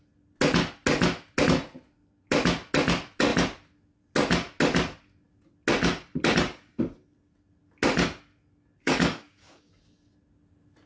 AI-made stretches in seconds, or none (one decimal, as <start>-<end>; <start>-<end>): 8.8-9.7